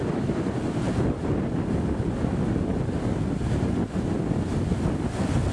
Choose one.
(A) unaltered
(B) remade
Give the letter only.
A